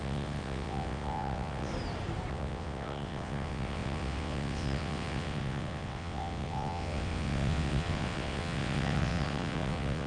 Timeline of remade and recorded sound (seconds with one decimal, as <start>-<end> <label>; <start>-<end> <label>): 0.0-1.7 remade; 1.7-2.3 recorded; 2.3-10.1 remade